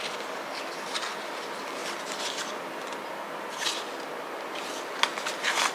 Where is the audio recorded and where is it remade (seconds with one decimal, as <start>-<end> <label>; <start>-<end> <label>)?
0.0-5.7 recorded